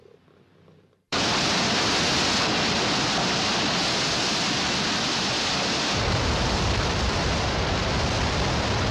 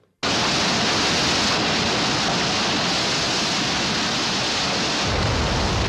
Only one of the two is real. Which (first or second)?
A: second